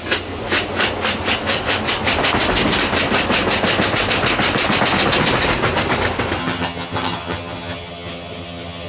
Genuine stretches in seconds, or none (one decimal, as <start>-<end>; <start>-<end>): 0.0-6.4